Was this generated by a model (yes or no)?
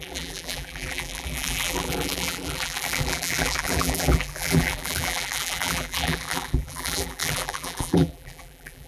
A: yes